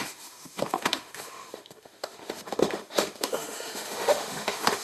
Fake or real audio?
fake